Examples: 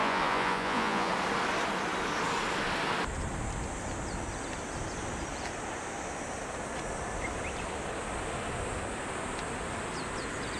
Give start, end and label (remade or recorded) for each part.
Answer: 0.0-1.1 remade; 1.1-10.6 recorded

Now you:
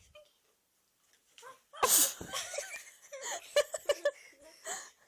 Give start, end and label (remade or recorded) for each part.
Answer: 0.0-5.1 recorded

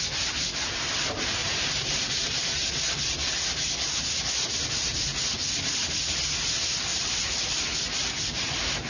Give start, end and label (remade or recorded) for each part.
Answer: 0.0-1.4 recorded; 1.4-2.7 remade; 2.7-6.9 recorded; 6.9-7.5 remade; 7.5-8.9 recorded

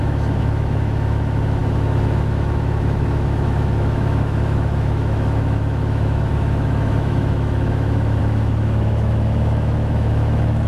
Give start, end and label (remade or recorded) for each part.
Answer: 0.0-10.7 remade

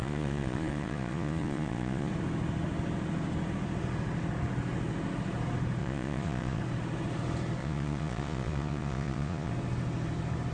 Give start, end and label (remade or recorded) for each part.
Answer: 0.0-2.1 remade; 2.1-5.8 recorded; 5.8-6.6 remade; 6.6-7.6 recorded; 7.6-9.5 remade; 9.5-10.5 recorded